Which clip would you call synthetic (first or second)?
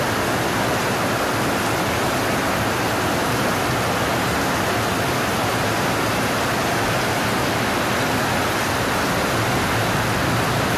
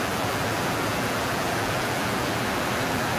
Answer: second